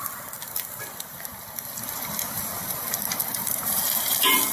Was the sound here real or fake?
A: fake